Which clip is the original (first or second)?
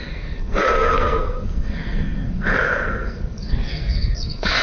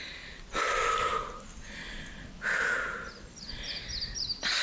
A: second